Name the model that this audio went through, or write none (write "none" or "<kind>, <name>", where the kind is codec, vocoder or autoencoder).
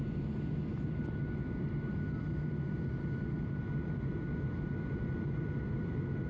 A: none